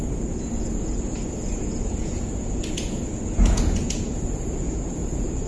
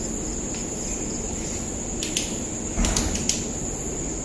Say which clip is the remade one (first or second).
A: first